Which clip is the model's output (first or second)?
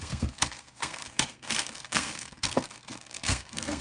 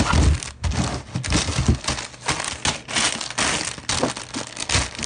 first